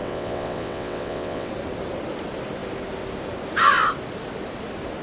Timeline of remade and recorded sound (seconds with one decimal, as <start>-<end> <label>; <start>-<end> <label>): 0.0-1.5 remade; 1.5-5.0 recorded